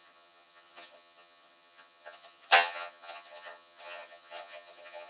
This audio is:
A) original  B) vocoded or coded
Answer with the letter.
B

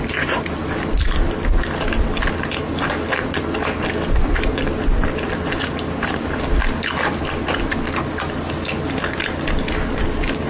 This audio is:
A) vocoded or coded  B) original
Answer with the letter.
B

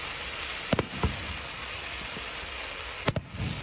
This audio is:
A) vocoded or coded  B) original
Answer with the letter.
B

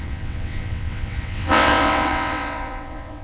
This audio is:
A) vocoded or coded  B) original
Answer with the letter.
A